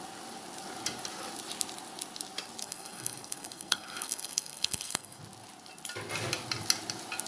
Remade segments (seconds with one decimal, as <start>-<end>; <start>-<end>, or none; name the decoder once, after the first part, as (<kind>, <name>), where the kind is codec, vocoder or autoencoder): 2.6-5.2 (codec, SNAC)